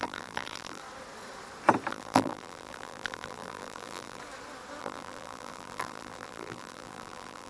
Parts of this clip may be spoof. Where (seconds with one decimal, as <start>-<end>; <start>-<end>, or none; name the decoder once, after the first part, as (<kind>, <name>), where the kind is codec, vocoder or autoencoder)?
0.0-0.8 (vocoder, BigVGAN v2); 1.9-4.2; 4.8-7.5